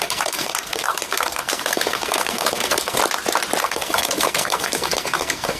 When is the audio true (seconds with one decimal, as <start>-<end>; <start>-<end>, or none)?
3.0-3.6